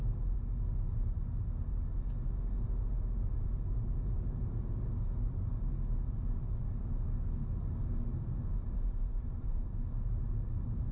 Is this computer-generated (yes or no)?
no